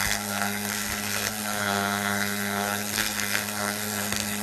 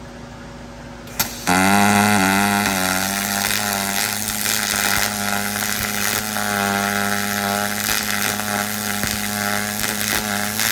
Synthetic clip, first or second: first